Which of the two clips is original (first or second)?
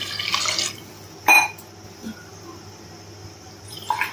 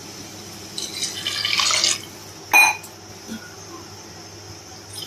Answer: second